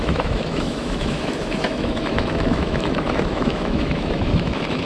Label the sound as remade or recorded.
remade